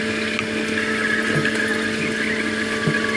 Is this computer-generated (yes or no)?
no